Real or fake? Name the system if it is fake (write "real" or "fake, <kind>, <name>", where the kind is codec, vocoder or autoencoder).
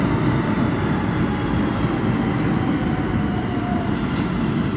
real